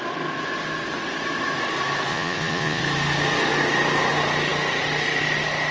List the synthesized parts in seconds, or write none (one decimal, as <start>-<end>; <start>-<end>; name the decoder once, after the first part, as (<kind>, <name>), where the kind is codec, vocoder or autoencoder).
2.1-2.8 (vocoder, Vocos)